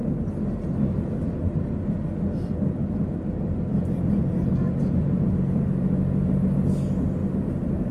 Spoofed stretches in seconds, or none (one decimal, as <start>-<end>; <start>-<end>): 4.5-5.3; 7.2-7.9